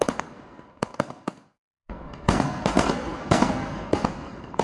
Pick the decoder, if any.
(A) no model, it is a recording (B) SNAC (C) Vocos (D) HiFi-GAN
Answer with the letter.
B